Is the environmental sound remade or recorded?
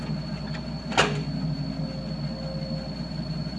recorded